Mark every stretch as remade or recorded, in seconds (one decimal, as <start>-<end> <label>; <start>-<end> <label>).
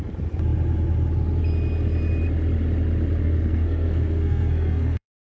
0.0-3.2 recorded; 3.2-5.3 remade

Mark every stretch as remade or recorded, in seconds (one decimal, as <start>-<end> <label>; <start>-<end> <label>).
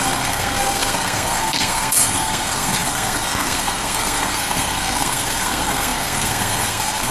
0.0-7.1 remade